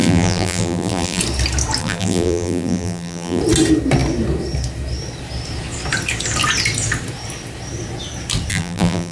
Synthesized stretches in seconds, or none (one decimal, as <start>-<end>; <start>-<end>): 0.0-1.2; 1.8-3.4; 8.5-9.1